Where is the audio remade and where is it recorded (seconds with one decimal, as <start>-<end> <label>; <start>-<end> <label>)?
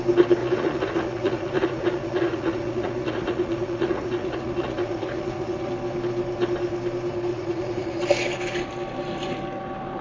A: 0.0-0.4 recorded; 0.4-5.7 remade; 5.7-7.3 recorded; 7.3-8.0 remade; 8.0-10.0 recorded